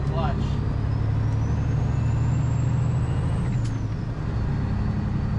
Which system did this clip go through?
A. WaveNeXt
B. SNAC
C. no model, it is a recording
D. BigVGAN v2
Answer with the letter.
C